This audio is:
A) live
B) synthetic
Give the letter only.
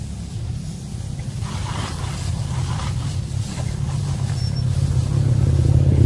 A